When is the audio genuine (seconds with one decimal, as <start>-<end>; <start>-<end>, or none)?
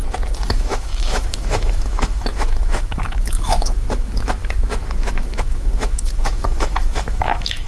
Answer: 0.0-0.5